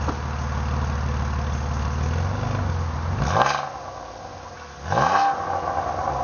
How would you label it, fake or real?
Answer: real